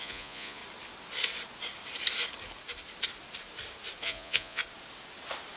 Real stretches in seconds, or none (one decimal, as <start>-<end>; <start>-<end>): 0.6-4.0; 4.6-5.6